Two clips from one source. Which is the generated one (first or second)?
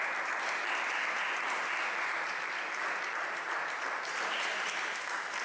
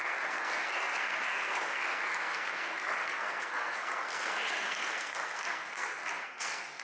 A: second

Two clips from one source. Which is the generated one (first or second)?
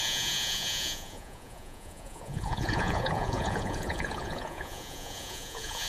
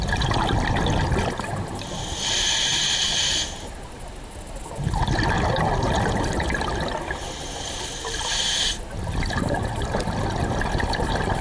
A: first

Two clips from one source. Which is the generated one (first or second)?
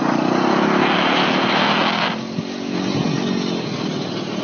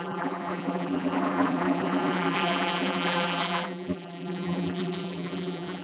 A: second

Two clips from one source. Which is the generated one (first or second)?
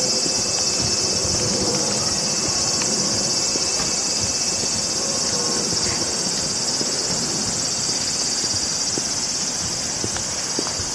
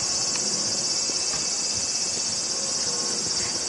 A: first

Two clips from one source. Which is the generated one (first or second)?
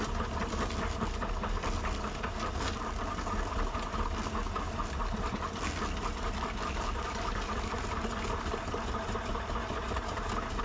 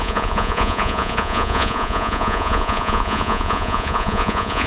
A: second